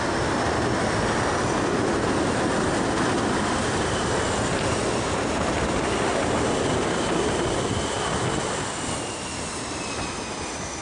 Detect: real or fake real